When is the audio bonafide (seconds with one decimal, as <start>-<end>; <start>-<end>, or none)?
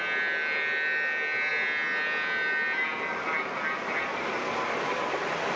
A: 0.0-5.6